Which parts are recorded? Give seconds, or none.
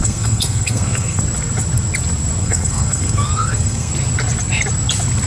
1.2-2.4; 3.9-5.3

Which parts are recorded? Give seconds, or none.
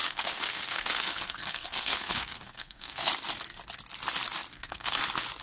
3.1-4.5; 5.0-5.4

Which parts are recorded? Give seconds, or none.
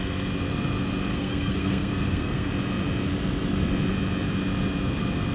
0.0-1.1; 2.5-5.3